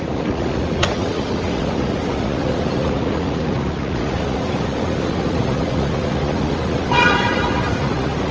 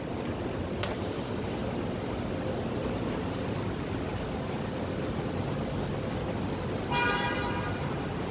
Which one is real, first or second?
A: second